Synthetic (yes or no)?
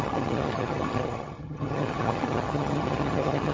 yes